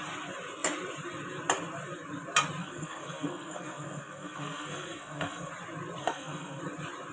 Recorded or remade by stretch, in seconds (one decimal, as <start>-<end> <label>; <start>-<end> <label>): 0.0-2.6 recorded; 2.6-5.5 remade; 5.5-6.0 recorded; 6.0-6.6 remade; 6.6-7.1 recorded

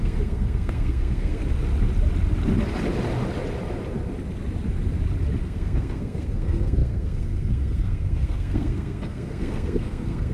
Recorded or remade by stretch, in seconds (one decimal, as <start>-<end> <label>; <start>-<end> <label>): 0.0-1.4 remade; 1.4-5.4 recorded; 5.4-10.3 remade

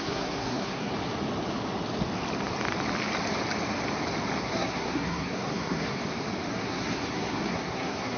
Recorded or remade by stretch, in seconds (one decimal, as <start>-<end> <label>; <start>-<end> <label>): 0.0-0.9 remade; 0.9-4.4 recorded; 4.4-6.0 remade; 6.0-6.5 recorded; 6.5-8.2 remade

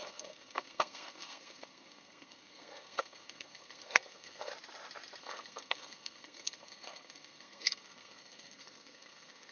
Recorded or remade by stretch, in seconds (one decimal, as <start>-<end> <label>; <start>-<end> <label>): 0.0-4.5 remade; 4.5-5.2 recorded; 5.2-9.5 remade

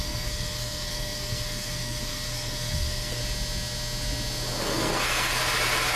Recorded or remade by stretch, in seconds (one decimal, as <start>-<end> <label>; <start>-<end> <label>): 0.0-3.2 remade; 3.2-4.6 recorded; 4.6-5.4 remade; 5.4-6.0 recorded

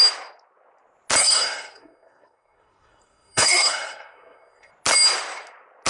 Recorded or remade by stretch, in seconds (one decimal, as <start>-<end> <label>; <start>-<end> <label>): 0.0-1.2 recorded; 1.2-4.7 remade; 4.7-5.9 recorded

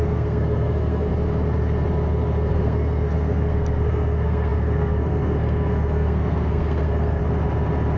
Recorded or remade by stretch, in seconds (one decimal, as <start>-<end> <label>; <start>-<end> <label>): 0.0-1.1 remade; 1.1-2.5 recorded; 2.5-7.2 remade; 7.2-8.0 recorded

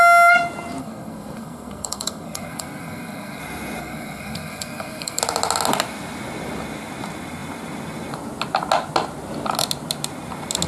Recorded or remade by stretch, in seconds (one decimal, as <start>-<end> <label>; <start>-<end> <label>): 0.0-0.8 recorded; 0.8-3.4 remade; 3.4-3.8 recorded; 3.8-5.2 remade; 5.2-10.7 recorded